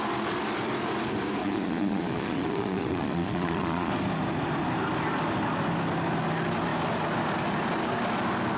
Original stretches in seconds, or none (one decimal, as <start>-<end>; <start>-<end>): 0.0-1.4; 3.9-8.6